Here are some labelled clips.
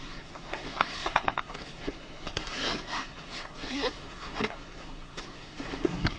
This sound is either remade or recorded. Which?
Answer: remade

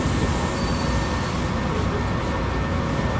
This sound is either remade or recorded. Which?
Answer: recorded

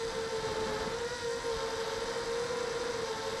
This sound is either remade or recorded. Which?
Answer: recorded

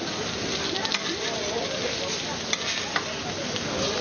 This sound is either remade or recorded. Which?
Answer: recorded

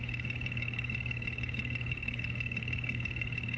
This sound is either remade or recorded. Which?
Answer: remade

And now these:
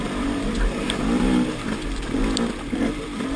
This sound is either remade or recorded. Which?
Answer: recorded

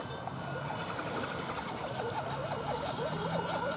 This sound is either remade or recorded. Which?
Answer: recorded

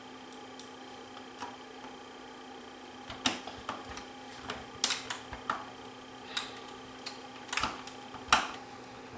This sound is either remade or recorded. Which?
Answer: recorded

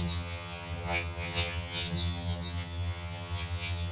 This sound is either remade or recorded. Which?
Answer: remade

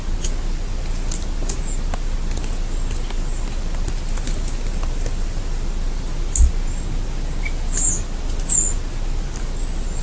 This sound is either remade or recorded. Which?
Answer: recorded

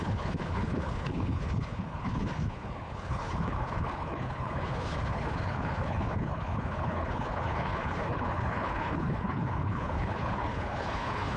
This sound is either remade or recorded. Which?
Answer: remade